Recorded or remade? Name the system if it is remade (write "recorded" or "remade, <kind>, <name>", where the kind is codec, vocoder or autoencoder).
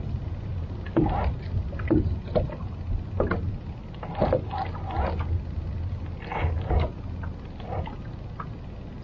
recorded